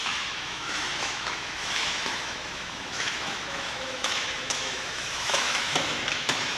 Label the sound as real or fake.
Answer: fake